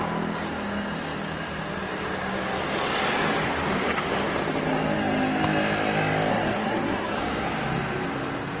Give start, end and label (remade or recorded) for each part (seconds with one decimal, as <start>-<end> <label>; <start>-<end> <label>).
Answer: 0.0-6.3 recorded; 6.3-7.2 remade; 7.2-8.6 recorded

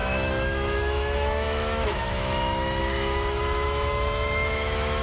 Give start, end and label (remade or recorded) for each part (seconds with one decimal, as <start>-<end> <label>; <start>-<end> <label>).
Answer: 0.0-5.0 remade

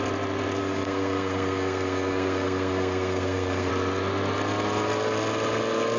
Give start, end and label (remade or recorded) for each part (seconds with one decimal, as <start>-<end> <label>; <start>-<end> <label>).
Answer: 0.0-0.6 recorded; 0.6-3.7 remade; 3.7-6.0 recorded

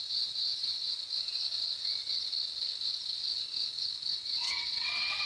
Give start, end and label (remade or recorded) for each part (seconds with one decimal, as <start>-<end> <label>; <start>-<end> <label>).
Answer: 0.0-0.9 remade; 0.9-4.1 recorded; 4.1-5.3 remade